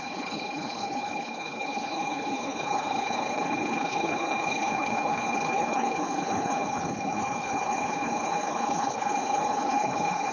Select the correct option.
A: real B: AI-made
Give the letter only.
B